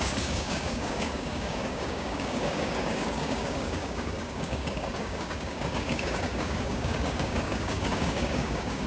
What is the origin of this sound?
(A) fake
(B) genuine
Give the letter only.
A